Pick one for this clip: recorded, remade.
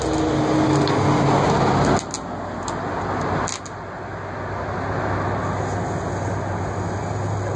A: recorded